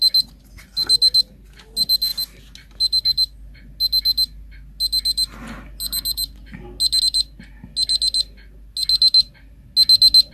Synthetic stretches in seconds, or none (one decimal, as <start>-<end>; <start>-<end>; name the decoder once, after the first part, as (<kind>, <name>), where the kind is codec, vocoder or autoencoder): none